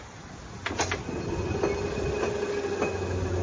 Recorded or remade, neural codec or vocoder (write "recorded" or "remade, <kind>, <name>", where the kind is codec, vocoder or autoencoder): recorded